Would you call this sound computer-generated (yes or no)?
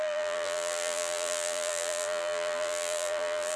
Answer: yes